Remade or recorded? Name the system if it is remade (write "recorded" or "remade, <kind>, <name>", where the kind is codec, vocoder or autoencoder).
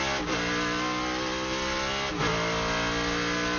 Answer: recorded